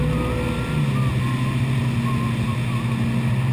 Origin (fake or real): real